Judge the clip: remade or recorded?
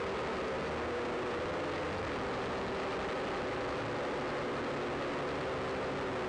recorded